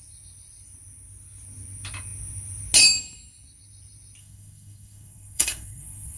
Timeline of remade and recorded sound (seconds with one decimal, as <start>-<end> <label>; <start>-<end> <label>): 0.0-4.2 recorded; 4.2-6.2 remade